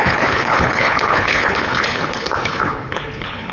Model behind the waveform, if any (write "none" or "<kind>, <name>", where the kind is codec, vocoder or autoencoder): codec, HILCodec